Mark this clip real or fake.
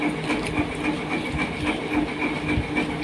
real